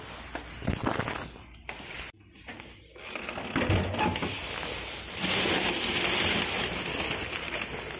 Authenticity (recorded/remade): recorded